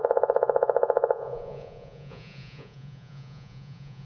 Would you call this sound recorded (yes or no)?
no